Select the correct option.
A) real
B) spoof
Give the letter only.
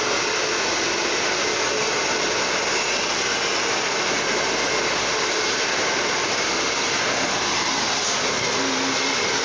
A